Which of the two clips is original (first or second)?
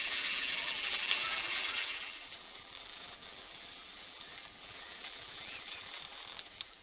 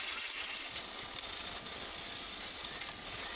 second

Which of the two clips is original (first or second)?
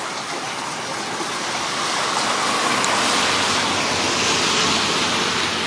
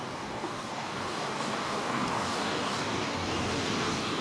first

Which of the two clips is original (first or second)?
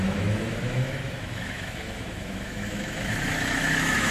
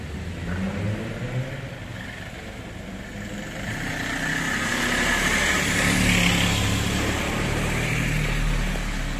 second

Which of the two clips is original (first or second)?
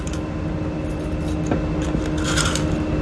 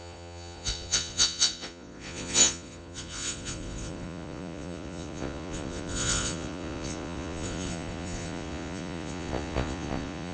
first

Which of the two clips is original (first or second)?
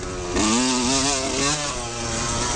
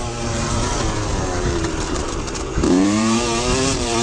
first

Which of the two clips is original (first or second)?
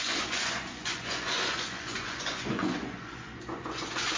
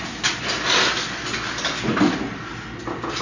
second